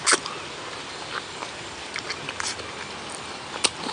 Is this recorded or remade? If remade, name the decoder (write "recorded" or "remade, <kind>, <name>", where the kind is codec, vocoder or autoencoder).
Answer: recorded